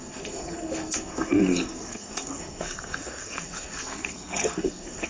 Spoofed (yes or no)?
yes